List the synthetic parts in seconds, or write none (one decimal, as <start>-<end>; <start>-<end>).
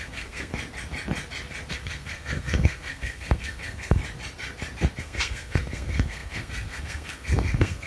0.0-0.5; 1.7-4.0; 5.0-7.9